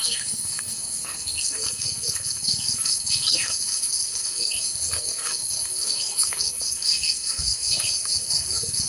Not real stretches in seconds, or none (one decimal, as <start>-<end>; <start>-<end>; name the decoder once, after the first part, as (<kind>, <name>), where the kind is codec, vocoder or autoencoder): 0.0-8.9 (codec, SNAC)